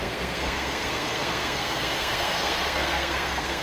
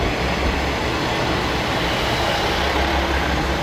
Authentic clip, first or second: second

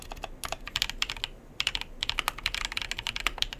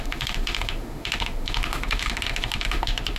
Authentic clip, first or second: first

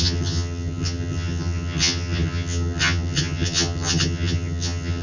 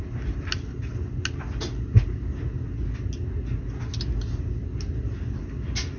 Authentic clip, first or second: second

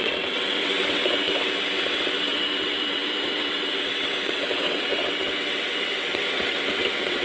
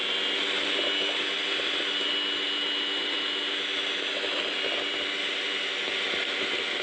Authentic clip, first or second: second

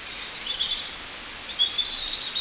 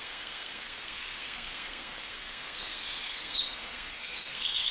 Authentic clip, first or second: first